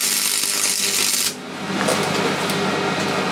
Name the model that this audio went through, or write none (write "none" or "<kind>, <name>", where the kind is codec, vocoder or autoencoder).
none